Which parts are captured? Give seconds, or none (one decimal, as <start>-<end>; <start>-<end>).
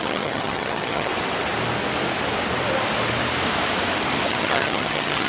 1.1-4.3